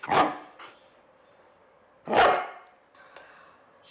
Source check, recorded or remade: recorded